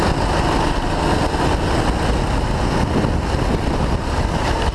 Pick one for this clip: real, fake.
real